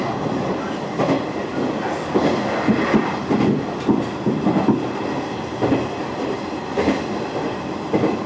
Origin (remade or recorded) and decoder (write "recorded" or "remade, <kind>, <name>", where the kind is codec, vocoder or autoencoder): recorded